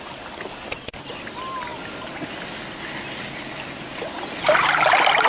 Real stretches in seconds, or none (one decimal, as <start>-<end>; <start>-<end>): 0.0-5.3